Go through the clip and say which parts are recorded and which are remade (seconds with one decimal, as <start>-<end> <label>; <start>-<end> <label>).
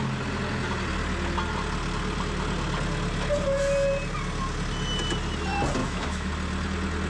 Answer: 0.0-5.8 recorded; 5.8-6.3 remade; 6.3-7.1 recorded